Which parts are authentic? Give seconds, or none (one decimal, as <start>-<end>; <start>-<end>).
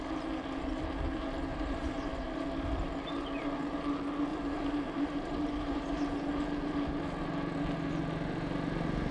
0.0-1.5; 2.4-4.3; 5.7-9.1